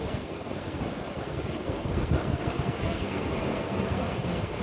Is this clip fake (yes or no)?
yes